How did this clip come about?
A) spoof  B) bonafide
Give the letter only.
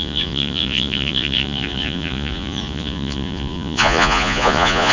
A